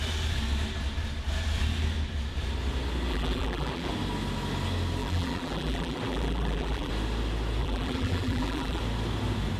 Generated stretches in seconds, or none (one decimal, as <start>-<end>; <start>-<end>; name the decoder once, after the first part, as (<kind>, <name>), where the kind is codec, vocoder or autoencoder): 3.1-3.9 (vocoder, BigVGAN v2); 5.0-6.9; 7.6-8.8

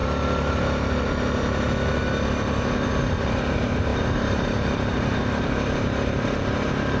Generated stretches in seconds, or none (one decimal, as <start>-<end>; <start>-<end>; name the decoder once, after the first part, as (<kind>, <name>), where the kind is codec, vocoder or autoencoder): 3.0-7.0 (vocoder, BigVGAN v2)

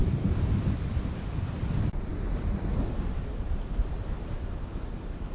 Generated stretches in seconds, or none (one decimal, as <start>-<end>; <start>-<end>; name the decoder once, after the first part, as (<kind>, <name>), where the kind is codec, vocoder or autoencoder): 0.0-2.1 (vocoder, BigVGAN v2)

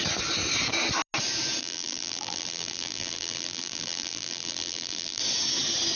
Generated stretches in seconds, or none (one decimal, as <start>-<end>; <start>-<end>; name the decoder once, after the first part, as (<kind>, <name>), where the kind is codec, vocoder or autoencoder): 1.6-5.2 (vocoder, BigVGAN v2)

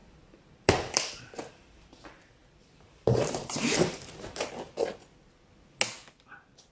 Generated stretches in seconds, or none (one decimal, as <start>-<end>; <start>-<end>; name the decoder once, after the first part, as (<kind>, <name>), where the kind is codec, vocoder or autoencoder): 0.0-1.1 (vocoder, BigVGAN v2); 2.4-5.0